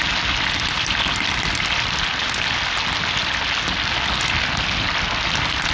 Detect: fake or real real